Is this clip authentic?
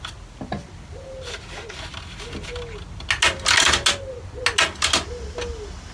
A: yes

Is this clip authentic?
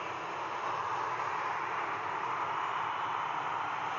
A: yes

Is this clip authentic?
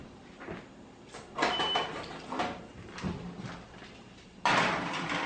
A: yes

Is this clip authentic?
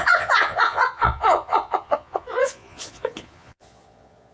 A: no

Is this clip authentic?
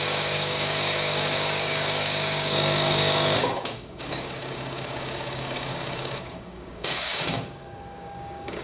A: no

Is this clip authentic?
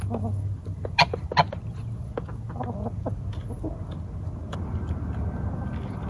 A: yes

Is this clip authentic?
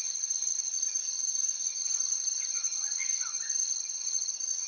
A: no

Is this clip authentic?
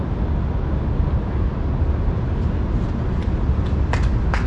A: yes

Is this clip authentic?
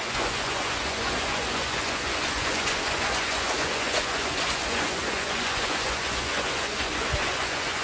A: no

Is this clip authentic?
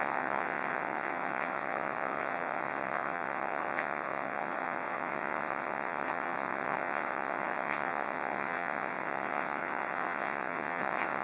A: no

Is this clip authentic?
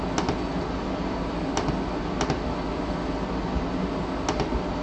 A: yes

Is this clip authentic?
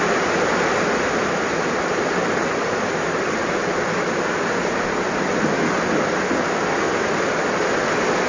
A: yes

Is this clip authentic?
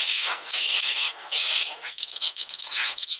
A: no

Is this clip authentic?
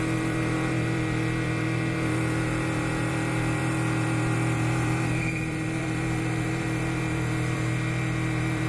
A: no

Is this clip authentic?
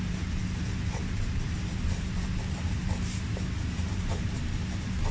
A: no